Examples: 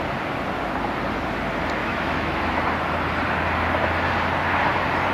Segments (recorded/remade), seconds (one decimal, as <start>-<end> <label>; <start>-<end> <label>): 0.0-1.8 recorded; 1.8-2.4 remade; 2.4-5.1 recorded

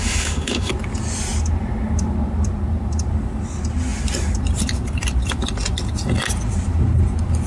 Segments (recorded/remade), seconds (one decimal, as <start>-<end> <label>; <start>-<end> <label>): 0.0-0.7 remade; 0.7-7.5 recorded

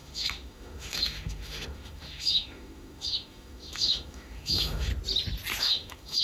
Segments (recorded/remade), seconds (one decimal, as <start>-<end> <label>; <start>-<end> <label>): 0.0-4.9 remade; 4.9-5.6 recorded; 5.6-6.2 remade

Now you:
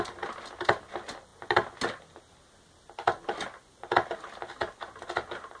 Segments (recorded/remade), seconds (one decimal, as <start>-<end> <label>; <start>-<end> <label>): 0.0-5.6 recorded

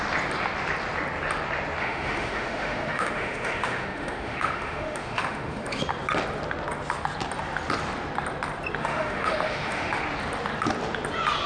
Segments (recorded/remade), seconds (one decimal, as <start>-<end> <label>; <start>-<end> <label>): 0.0-1.8 recorded; 1.8-5.8 remade; 5.8-8.8 recorded; 8.8-10.0 remade; 10.0-11.5 recorded